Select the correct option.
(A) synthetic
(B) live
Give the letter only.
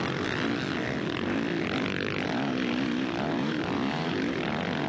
B